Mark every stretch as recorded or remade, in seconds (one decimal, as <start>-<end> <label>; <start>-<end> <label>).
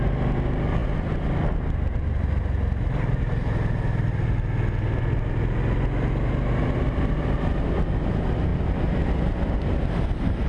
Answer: 0.0-10.5 recorded